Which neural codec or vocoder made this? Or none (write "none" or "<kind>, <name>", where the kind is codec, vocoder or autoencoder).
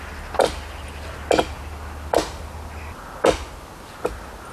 none